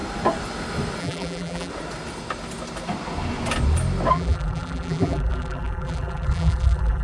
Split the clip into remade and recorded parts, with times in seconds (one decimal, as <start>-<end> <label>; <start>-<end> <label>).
0.0-1.0 recorded; 1.0-1.7 remade; 1.7-4.1 recorded; 4.1-7.0 remade